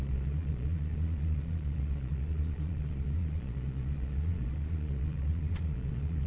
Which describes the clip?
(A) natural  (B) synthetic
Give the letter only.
B